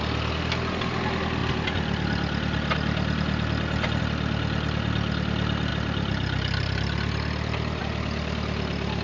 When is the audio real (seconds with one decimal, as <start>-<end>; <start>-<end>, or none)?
0.0-5.7; 7.8-9.0